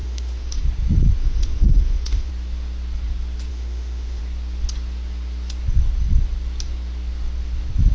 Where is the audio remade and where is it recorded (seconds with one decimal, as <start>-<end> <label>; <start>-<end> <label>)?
0.0-0.6 remade; 0.6-1.2 recorded; 1.2-2.3 remade; 2.3-3.5 recorded; 3.5-4.2 remade; 4.2-7.9 recorded